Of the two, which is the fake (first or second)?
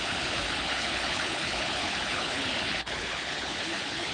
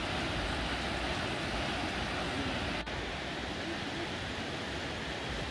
first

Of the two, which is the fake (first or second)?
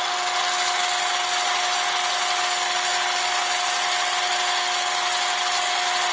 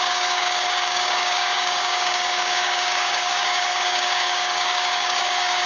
second